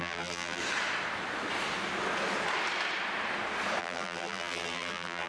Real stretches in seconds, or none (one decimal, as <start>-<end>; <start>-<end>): 0.6-3.8